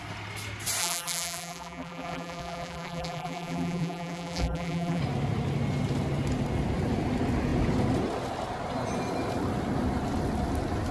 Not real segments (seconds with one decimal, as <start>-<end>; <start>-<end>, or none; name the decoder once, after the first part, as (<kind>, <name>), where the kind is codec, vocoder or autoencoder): 0.8-5.0 (vocoder, BigVGAN v2)